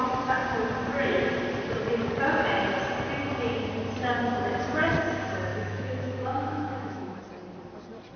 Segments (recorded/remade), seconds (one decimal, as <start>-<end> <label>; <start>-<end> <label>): 0.0-5.5 recorded; 5.5-7.2 remade; 7.2-8.2 recorded